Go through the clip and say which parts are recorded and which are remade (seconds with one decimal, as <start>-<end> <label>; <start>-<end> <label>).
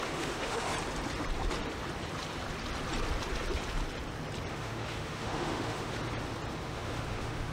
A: 0.0-0.7 remade; 0.7-4.5 recorded; 4.5-6.0 remade; 6.0-6.5 recorded; 6.5-7.5 remade